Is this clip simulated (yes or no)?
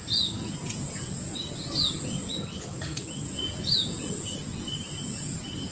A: yes